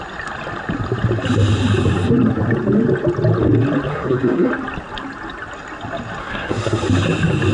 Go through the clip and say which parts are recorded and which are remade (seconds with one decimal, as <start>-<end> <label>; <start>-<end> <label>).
0.0-3.9 recorded; 3.9-4.5 remade; 4.5-6.2 recorded; 6.2-6.8 remade; 6.8-7.5 recorded